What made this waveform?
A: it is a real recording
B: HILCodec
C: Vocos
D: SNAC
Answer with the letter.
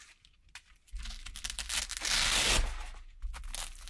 A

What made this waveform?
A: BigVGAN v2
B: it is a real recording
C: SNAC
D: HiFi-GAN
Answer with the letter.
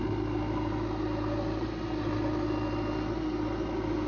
B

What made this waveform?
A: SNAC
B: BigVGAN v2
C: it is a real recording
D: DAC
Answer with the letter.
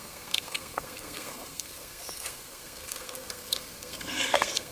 A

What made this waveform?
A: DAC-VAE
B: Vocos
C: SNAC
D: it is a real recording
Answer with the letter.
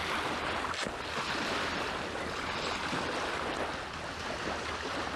D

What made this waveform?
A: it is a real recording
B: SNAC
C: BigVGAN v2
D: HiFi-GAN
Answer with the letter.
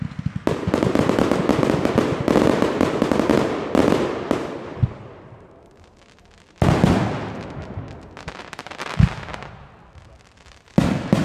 A